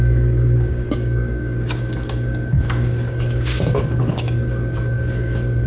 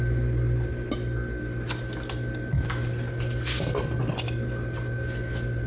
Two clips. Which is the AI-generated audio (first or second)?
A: first